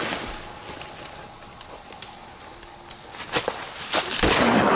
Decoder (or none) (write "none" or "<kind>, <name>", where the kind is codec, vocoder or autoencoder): none